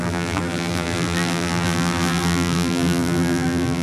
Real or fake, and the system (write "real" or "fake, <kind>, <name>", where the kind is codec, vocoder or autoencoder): fake, vocoder, BigVGAN v2